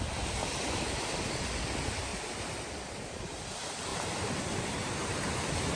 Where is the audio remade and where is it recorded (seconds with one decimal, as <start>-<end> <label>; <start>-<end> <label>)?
0.0-0.4 recorded; 0.4-1.1 remade; 1.1-5.8 recorded